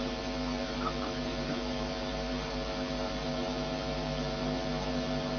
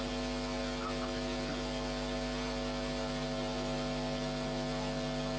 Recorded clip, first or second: second